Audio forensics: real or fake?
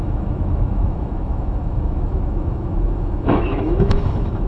fake